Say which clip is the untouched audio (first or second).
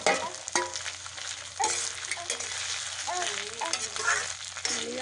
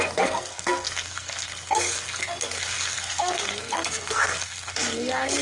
first